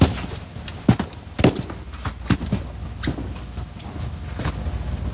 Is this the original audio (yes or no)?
yes